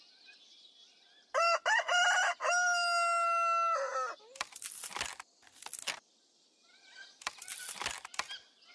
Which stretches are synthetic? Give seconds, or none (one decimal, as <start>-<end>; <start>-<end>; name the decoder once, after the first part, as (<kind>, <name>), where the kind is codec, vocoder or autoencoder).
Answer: none